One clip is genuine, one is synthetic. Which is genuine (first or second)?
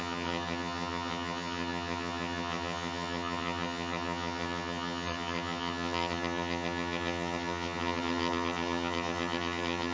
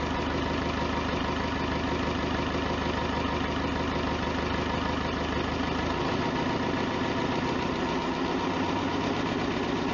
second